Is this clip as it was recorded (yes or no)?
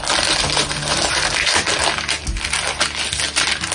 yes